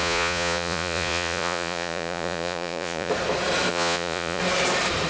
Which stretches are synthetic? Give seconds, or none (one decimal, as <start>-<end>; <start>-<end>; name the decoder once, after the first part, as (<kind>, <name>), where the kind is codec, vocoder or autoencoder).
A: 0.0-3.1 (vocoder, Vocos); 3.7-4.4